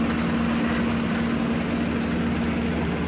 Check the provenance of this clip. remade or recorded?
recorded